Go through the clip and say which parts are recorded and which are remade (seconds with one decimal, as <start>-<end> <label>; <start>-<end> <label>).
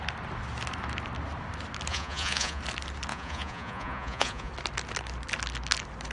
0.0-1.9 recorded; 1.9-2.6 remade; 2.6-3.1 recorded; 3.1-4.5 remade; 4.5-6.1 recorded